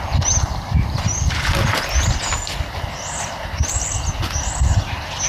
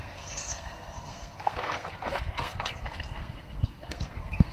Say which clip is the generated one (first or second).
second